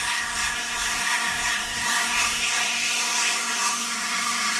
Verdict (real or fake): fake